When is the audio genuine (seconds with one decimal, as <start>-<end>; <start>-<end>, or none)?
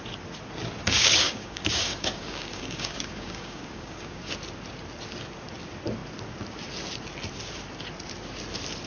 0.0-0.8; 4.3-8.9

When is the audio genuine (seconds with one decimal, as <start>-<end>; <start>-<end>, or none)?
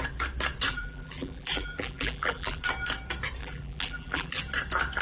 0.0-0.7; 2.6-3.4; 4.4-5.0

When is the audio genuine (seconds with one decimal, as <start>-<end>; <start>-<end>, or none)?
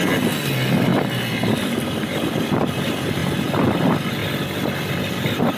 0.0-5.6